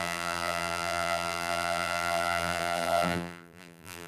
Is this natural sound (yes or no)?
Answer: no